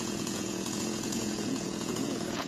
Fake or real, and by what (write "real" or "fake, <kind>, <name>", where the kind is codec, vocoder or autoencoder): fake, vocoder, Vocos